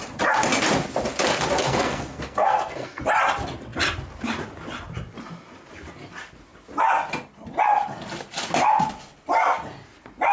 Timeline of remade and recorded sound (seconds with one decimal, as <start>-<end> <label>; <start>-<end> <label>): 0.0-1.6 recorded; 1.6-3.0 remade; 3.0-10.3 recorded